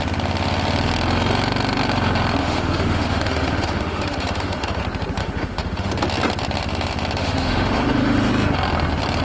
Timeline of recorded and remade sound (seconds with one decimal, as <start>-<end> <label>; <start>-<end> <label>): 0.0-2.4 recorded; 2.4-4.8 remade; 4.8-5.2 recorded; 5.2-5.9 remade; 5.9-7.2 recorded; 7.2-8.3 remade; 8.3-9.2 recorded